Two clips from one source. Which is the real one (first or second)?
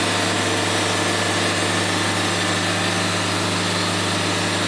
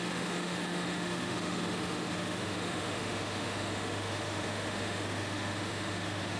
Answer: first